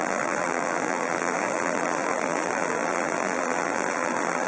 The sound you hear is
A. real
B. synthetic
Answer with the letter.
B